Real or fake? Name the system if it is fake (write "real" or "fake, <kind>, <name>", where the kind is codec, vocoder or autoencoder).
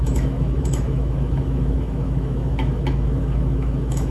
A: fake, autoencoder, DAC-VAE